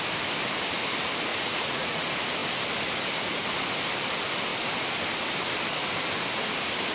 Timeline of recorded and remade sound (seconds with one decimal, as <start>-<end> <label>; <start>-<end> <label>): 0.0-1.3 recorded; 1.3-2.0 remade; 2.0-6.9 recorded